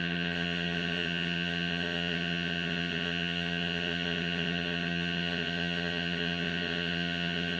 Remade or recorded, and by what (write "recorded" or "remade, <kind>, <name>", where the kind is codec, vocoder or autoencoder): remade, vocoder, HiFi-GAN